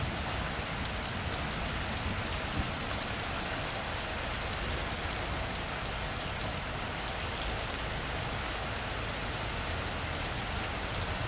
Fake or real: real